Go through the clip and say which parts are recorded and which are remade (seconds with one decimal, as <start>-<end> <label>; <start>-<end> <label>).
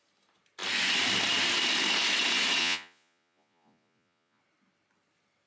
0.0-2.6 recorded; 2.6-4.4 remade; 4.4-5.5 recorded